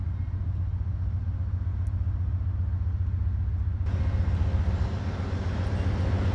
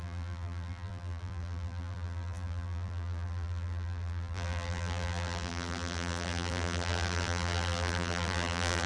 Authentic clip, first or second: first